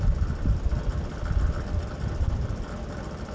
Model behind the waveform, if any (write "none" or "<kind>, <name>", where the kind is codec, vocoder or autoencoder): none